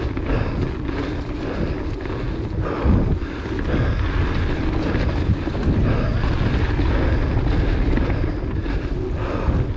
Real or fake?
real